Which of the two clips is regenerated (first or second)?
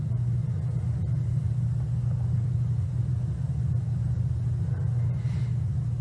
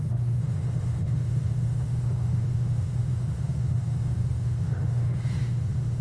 second